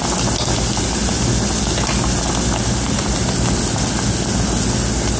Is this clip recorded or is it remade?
recorded